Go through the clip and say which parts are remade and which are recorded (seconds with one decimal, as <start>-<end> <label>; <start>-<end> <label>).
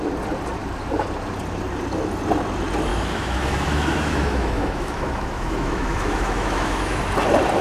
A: 0.0-2.9 recorded; 2.9-7.0 remade; 7.0-7.6 recorded